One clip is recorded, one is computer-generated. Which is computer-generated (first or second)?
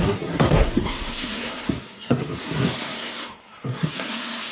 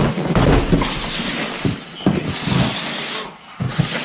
first